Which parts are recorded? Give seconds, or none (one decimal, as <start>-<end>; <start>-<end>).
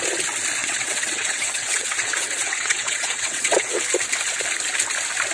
0.0-0.6; 3.8-5.3